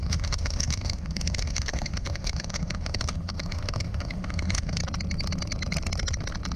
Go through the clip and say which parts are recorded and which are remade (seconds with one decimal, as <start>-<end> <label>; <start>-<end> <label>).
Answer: 0.0-4.8 remade; 4.8-6.6 recorded